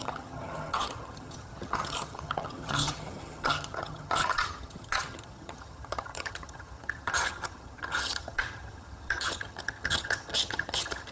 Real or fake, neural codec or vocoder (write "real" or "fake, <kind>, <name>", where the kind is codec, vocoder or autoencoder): fake, vocoder, HiFi-GAN